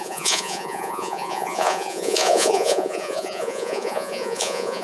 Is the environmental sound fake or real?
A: fake